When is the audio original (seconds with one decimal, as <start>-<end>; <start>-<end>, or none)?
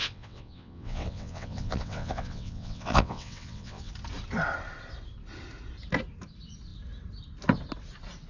3.9-8.3